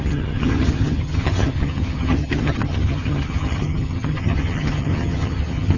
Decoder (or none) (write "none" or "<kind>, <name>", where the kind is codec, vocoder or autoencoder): vocoder, HiFi-GAN